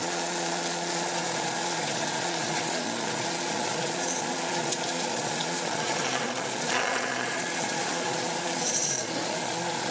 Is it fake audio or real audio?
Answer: fake